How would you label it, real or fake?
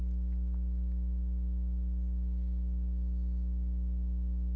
real